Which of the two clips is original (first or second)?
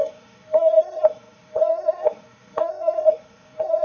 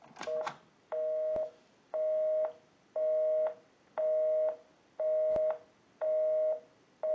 second